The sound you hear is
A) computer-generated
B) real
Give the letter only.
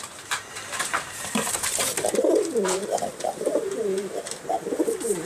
A